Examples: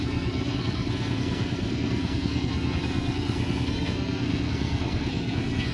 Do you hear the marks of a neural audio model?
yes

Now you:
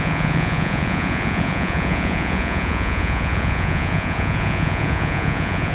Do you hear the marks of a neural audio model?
yes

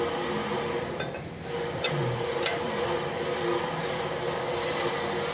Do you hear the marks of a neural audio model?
no